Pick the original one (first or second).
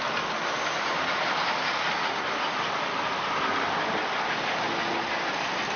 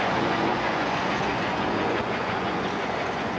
first